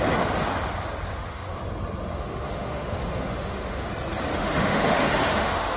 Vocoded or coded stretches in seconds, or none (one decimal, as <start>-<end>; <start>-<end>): 1.1-1.6; 2.1-3.9; 4.3-5.8

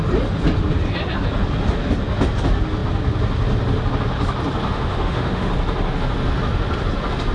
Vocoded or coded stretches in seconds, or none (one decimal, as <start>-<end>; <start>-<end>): 4.7-5.5

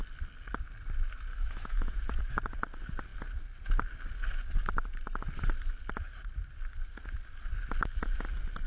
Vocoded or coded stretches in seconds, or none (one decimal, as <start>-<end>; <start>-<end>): 1.3-2.3

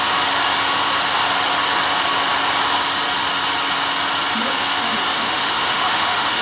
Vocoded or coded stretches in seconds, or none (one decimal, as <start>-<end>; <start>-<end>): 5.1-6.4

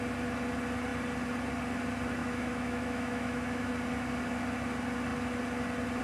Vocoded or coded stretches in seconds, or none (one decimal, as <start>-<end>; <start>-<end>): 2.2-3.7